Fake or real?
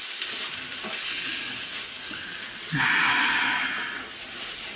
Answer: real